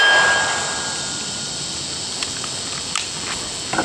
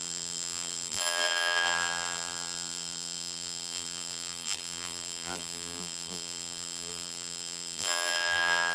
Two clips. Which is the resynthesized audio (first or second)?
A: second